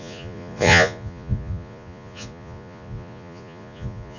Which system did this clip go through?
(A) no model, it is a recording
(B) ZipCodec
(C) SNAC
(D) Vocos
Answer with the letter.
D